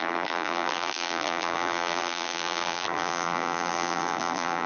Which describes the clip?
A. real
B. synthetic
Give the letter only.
B